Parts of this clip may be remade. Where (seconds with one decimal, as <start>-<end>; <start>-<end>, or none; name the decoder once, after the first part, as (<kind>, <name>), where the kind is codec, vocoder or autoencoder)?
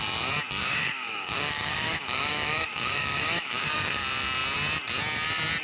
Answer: 0.6-4.0 (codec, DAC)